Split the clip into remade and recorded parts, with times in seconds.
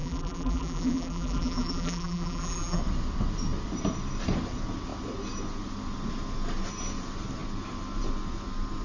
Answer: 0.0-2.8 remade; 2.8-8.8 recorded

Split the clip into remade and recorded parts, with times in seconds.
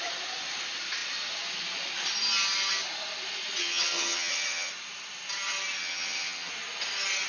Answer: 0.0-3.6 recorded; 3.6-4.7 remade; 4.7-5.8 recorded; 5.8-6.5 remade; 6.5-7.3 recorded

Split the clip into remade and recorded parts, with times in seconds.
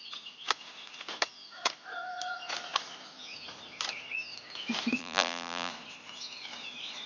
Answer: 0.0-5.0 recorded; 5.0-5.7 remade; 5.7-7.1 recorded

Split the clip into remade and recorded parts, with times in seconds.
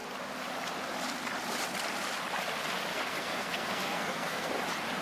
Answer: 0.0-2.9 recorded; 2.9-4.5 remade; 4.5-5.0 recorded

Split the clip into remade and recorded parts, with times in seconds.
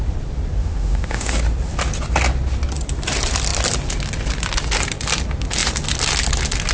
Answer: 0.0-0.6 recorded; 0.6-1.3 remade; 1.3-6.7 recorded